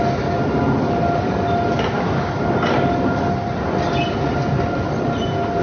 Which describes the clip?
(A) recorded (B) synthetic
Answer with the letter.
A